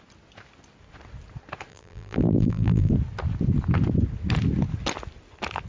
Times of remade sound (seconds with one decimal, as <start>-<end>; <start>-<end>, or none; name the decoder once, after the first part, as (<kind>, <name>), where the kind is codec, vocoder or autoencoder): 1.7-2.9 (vocoder, BigVGAN v2)